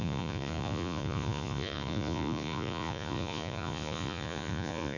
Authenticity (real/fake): fake